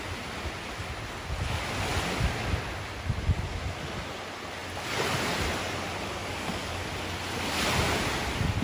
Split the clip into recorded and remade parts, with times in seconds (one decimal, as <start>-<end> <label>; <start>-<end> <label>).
0.0-6.2 recorded; 6.2-6.9 remade; 6.9-8.6 recorded